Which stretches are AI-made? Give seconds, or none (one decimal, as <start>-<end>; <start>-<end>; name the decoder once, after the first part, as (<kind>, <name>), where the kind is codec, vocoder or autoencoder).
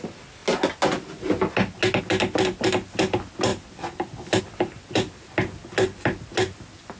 3.5-4.4 (vocoder, BigVGAN v2)